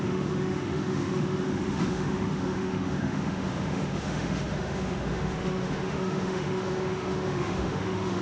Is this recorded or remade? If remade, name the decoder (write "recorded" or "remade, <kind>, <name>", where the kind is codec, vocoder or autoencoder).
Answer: remade, autoencoder, DAC-VAE